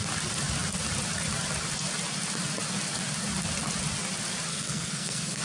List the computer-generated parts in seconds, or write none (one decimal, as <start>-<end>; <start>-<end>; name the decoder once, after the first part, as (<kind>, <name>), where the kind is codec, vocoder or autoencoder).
4.5-5.4 (codec, SNAC)